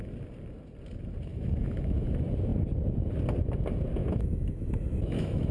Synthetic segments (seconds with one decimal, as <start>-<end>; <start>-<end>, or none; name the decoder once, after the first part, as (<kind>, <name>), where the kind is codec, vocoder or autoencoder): 1.3-2.1 (autoencoder, DAC-VAE); 4.0-5.5